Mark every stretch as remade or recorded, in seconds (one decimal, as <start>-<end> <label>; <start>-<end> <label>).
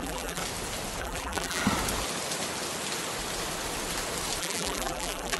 0.0-0.4 remade; 0.4-1.0 recorded; 1.0-1.6 remade; 1.6-4.4 recorded; 4.4-5.4 remade